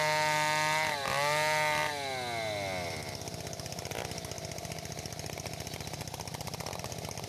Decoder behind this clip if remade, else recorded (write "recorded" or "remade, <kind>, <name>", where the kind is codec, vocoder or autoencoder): recorded